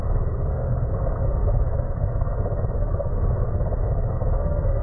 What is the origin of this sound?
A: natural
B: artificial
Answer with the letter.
B